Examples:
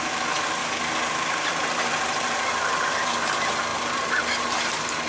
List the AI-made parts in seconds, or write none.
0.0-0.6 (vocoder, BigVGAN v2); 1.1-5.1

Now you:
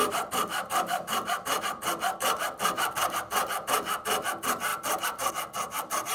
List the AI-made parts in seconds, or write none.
0.0-1.6 (vocoder, BigVGAN v2)

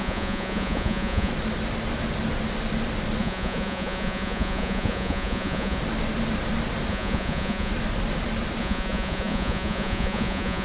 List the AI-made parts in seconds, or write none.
0.0-1.3 (vocoder, Vocos); 3.2-5.8; 6.9-7.7; 8.6-10.6

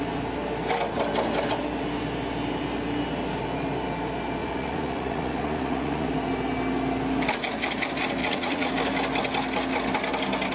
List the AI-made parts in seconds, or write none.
4.4-6.1 (vocoder, Vocos); 8.2-8.7

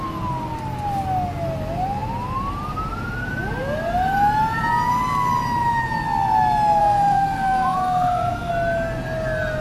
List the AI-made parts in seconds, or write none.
6.8-8.5 (codec, SNAC)

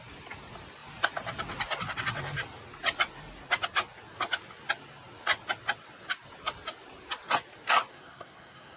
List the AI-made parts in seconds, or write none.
7.9-8.8 (codec, SNAC)

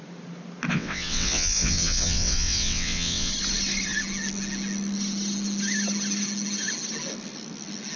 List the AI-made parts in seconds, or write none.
0.7-3.3 (vocoder, WaveNeXt)

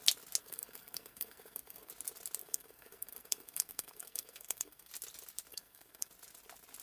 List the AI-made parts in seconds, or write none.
0.4-1.9 (codec, SNAC); 2.4-4.9; 5.5-6.1